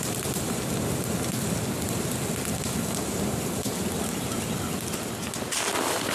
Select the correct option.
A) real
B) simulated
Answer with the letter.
A